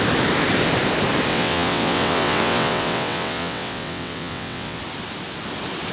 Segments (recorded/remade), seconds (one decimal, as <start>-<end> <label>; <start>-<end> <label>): 0.0-1.3 recorded; 1.3-4.8 remade; 4.8-5.9 recorded